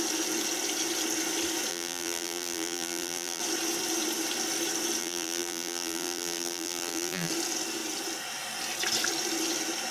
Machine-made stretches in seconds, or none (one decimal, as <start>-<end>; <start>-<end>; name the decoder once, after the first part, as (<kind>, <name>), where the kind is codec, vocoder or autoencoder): 1.7-3.4 (vocoder, BigVGAN v2); 5.0-7.3